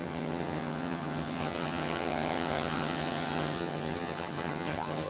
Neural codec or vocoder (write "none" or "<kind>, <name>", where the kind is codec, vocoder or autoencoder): vocoder, HiFi-GAN